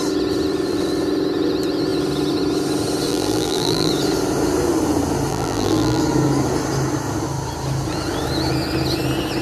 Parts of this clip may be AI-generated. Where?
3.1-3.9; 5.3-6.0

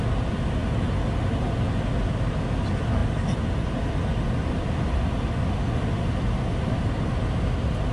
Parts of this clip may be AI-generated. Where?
none